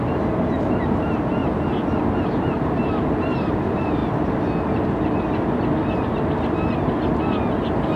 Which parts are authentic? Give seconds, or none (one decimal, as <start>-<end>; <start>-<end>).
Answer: 1.4-2.0; 4.0-8.0